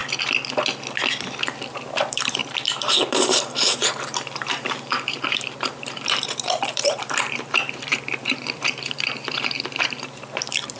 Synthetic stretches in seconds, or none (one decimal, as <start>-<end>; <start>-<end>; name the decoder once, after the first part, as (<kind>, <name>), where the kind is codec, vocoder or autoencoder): 1.6-10.8 (vocoder, BigVGAN v2)

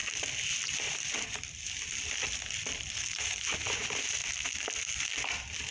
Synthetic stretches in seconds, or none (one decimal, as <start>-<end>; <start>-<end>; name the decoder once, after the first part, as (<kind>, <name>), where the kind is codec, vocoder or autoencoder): 0.0-3.4 (vocoder, BigVGAN v2); 4.2-5.0